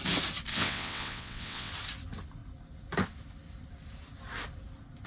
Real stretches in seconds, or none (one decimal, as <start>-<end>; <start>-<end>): 0.0-0.5; 1.7-5.1